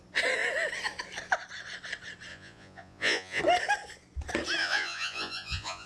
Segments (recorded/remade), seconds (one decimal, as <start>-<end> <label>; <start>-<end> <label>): 0.0-2.3 recorded; 2.3-3.4 remade; 3.4-4.6 recorded; 4.6-5.9 remade